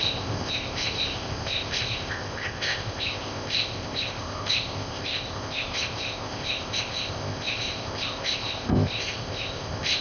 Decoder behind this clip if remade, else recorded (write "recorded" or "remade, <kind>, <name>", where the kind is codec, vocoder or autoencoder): remade, codec, ZipCodec